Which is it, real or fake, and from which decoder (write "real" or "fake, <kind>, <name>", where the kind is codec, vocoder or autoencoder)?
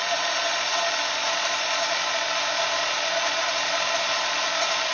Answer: real